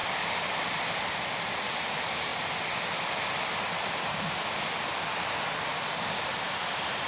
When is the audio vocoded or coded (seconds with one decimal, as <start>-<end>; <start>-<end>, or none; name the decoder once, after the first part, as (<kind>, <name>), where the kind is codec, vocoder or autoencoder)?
0.0-1.0 (vocoder, BigVGAN v2)